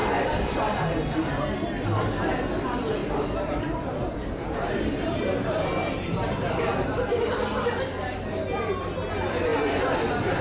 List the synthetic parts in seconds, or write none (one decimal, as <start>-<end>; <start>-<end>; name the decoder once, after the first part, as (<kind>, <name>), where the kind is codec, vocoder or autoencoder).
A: 0.0-0.6 (vocoder, BigVGAN v2); 3.0-7.0